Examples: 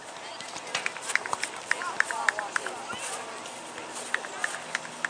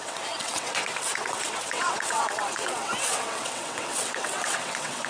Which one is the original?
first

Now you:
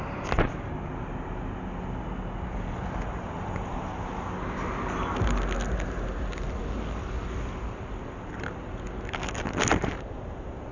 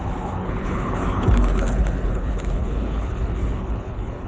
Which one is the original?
first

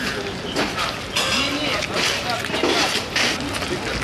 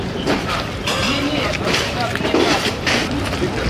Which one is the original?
first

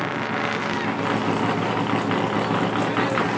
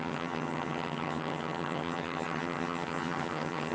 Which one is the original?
first